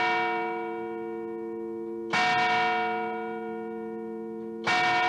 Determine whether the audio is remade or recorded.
recorded